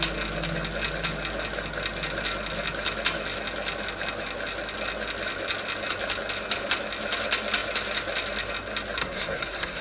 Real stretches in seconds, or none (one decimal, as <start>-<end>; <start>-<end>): 0.0-9.0